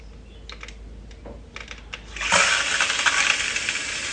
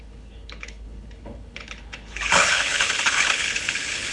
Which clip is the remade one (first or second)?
second